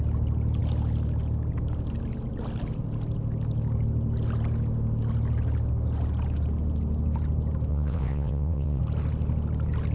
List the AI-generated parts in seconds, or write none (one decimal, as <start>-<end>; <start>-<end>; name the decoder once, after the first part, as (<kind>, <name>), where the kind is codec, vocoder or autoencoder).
7.7-8.8 (vocoder, WaveNeXt)